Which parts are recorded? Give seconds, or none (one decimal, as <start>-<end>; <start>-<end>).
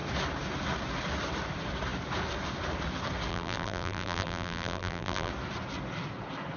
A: 0.0-3.3; 5.3-6.6